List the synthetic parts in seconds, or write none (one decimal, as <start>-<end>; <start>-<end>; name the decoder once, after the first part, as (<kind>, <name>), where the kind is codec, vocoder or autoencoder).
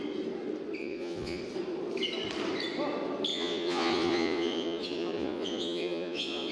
0.8-1.4 (vocoder, Vocos); 3.3-6.5